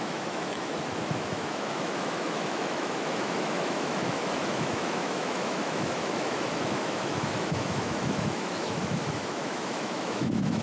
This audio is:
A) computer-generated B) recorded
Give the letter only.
A